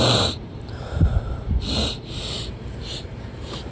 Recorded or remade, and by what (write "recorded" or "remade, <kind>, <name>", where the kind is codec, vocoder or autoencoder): remade, vocoder, BigVGAN v2